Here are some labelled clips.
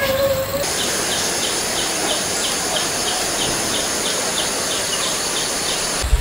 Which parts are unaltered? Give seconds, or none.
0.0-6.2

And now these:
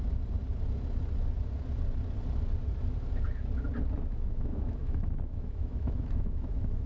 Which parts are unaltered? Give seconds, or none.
0.0-4.1

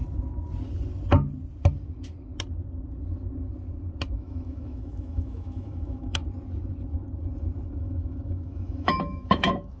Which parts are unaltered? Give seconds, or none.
0.0-4.1; 6.2-7.8

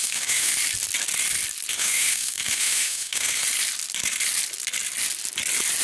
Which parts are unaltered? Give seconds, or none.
0.5-1.7; 3.4-5.8